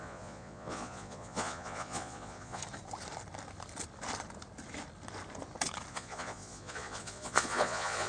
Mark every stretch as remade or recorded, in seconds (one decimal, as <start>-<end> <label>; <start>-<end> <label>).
0.0-2.6 remade; 2.6-5.9 recorded; 5.9-8.1 remade